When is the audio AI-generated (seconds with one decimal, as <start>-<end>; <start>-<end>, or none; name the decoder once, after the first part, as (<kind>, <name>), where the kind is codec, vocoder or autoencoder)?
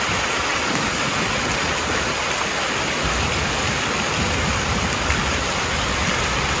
none